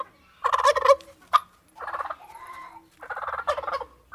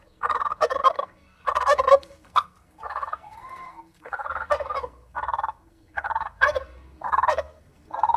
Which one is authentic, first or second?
first